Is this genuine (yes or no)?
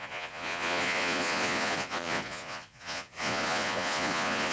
no